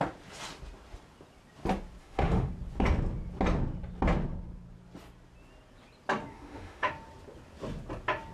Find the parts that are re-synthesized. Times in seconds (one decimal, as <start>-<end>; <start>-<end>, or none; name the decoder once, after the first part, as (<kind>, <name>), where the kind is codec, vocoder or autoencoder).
2.0-2.5 (autoencoder, DAC-VAE); 6.3-6.9